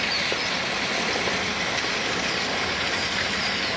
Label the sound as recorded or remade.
recorded